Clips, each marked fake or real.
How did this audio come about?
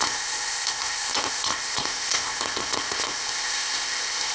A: fake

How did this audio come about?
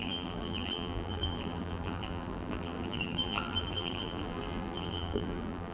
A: fake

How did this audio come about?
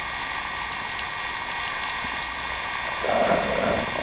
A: real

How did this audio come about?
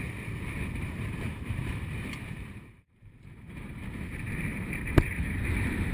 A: fake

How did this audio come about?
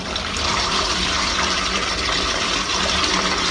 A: fake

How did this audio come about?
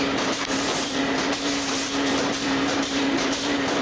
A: fake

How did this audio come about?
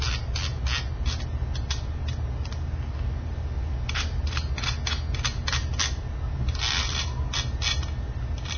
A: real